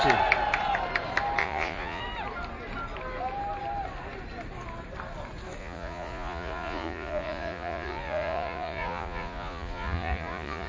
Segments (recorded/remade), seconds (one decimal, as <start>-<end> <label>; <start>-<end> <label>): 0.0-1.4 recorded; 1.4-2.0 remade; 2.0-5.6 recorded; 5.6-10.7 remade